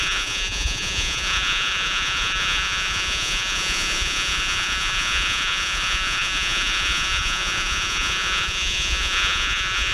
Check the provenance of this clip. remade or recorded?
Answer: remade